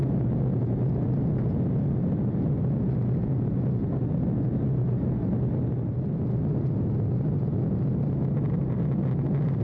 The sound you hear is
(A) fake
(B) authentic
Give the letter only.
B